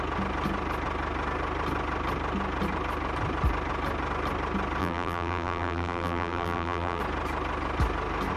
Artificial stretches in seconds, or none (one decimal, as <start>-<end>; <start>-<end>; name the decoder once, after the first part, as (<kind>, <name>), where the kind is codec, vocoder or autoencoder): 4.8-7.0 (vocoder, BigVGAN v2)